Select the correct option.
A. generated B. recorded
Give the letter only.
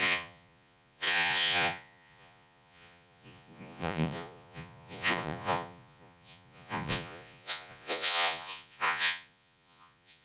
A